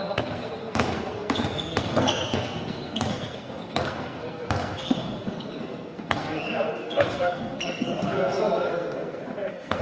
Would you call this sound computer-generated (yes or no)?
yes